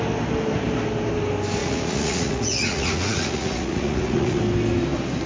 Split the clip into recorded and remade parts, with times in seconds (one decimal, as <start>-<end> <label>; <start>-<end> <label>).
0.0-1.6 recorded; 1.6-4.4 remade; 4.4-5.3 recorded